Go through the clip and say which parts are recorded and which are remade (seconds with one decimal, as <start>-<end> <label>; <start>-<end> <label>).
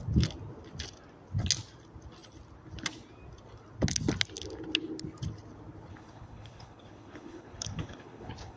0.0-5.9 recorded; 5.9-8.6 remade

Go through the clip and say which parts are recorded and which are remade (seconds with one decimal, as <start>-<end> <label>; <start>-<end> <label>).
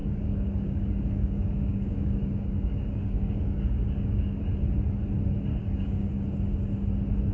0.0-4.4 remade; 4.4-5.5 recorded; 5.5-6.1 remade; 6.1-7.3 recorded